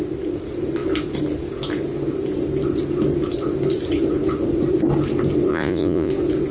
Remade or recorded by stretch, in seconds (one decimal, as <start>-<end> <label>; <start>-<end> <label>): 0.0-5.5 recorded; 5.5-6.1 remade; 6.1-6.5 recorded

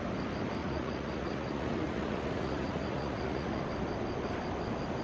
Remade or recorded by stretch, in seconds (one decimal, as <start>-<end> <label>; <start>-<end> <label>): 0.0-0.6 recorded; 0.6-3.6 remade; 3.6-5.0 recorded

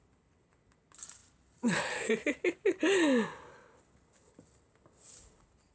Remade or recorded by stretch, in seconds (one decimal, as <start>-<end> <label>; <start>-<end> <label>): 0.0-5.7 recorded

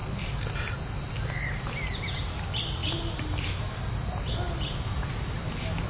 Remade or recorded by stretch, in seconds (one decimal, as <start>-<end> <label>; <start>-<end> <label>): 0.0-5.9 recorded